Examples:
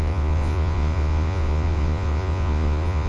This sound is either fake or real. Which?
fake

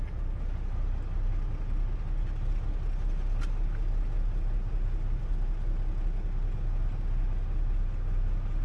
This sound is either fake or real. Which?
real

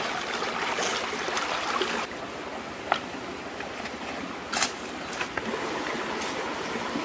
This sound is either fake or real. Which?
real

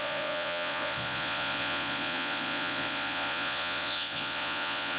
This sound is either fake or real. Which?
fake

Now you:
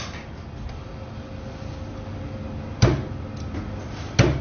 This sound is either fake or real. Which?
real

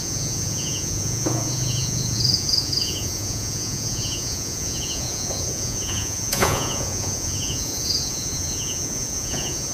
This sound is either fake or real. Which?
fake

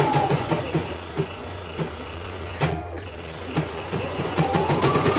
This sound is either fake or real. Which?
fake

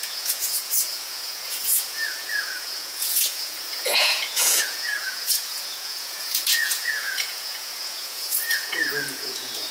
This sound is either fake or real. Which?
fake